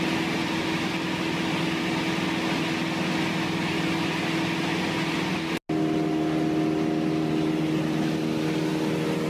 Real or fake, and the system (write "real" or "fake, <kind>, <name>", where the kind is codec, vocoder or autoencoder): real